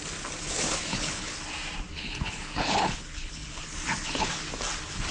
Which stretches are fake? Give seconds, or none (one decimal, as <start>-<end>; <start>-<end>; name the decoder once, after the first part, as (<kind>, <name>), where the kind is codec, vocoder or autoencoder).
0.8-1.3 (codec, HILCodec); 1.9-4.3